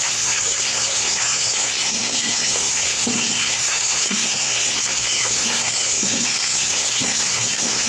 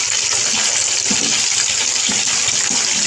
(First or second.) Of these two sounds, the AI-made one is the first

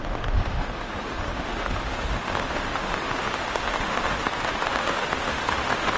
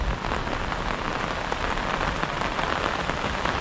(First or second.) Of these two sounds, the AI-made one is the first